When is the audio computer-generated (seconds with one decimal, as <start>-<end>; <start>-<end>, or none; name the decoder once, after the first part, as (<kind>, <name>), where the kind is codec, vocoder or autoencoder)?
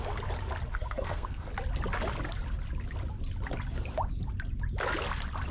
0.7-1.5 (codec, SNAC)